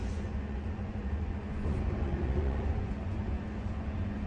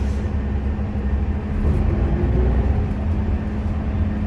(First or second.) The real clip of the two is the second